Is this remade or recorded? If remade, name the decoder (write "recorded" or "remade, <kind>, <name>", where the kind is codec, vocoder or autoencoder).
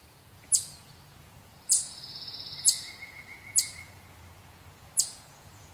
remade, vocoder, Vocos